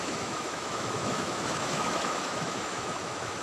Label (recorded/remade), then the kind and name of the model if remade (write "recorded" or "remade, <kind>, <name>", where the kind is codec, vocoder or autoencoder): remade, autoencoder, DAC-VAE